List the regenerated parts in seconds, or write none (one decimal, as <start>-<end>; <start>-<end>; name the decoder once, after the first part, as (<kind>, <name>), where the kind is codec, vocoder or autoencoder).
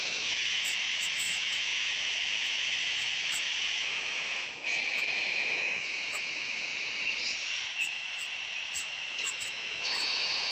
0.0-6.7 (autoencoder, DAC-VAE); 7.8-8.2; 8.8-10.5